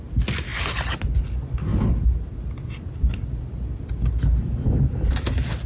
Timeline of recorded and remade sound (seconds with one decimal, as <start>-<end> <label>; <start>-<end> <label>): 0.0-5.7 recorded